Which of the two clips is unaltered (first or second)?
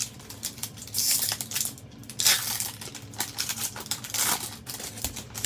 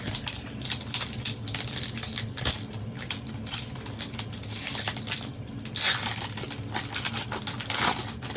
second